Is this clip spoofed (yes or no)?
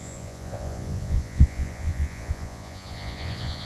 yes